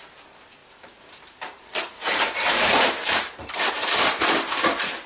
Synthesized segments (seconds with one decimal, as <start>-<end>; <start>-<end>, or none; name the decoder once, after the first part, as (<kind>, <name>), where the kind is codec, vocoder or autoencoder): 0.6-3.7 (vocoder, BigVGAN v2)